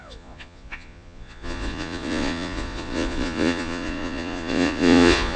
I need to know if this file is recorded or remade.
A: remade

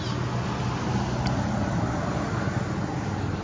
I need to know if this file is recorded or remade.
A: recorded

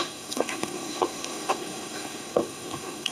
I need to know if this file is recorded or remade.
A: remade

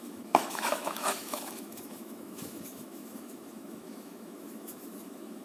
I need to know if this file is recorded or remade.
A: remade